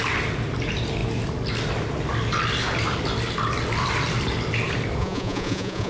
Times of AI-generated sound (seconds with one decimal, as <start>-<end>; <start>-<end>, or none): 5.0-5.9

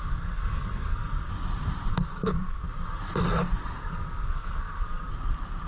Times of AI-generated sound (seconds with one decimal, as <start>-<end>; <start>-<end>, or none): 0.0-1.3; 1.9-3.0; 3.8-5.1